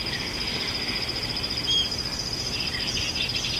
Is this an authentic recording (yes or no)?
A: yes